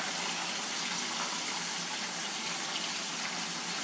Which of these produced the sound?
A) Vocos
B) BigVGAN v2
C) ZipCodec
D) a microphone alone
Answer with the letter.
D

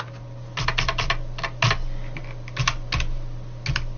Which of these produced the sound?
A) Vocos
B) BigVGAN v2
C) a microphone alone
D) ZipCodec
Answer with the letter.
C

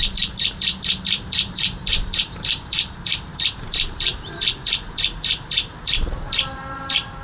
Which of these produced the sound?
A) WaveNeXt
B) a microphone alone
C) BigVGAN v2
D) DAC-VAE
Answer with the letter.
C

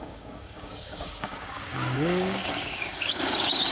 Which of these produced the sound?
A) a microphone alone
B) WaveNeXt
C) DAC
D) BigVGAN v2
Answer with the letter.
C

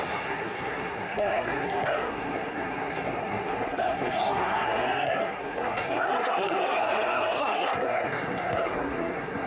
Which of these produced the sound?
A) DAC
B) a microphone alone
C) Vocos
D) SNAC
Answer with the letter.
D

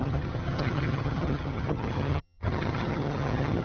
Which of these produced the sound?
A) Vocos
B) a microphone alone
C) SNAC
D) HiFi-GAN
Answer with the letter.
D